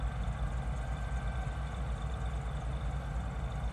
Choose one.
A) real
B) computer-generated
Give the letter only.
A